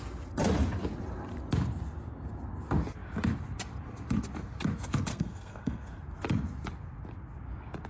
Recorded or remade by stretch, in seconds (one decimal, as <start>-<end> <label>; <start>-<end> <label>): 0.0-5.1 recorded; 5.1-5.9 remade; 5.9-7.9 recorded